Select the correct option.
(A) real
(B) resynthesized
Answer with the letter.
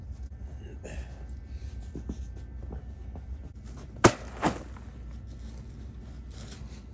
A